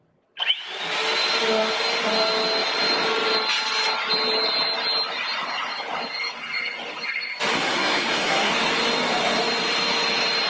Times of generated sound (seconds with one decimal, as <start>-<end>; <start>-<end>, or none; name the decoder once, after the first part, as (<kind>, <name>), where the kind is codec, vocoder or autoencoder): 7.5-8.5 (codec, SNAC)